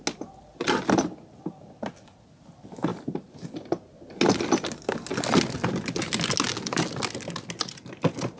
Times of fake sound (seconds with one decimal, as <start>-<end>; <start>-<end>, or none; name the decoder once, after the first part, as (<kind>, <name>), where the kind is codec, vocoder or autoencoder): none